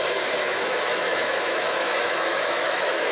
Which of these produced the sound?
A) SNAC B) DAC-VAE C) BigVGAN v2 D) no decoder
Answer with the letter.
B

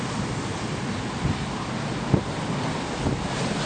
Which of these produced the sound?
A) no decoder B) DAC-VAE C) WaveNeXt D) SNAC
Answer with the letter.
A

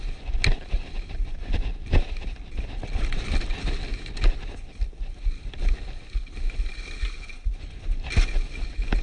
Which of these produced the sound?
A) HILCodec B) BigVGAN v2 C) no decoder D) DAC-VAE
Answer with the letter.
C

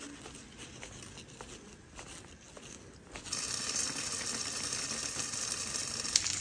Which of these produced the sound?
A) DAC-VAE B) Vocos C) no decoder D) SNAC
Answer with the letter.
C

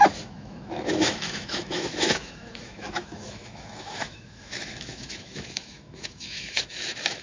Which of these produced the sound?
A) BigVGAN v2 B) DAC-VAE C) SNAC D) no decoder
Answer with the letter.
B